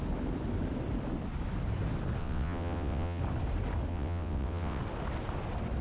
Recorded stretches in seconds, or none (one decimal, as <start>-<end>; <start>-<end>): 0.0-2.2; 3.2-3.9; 4.8-5.8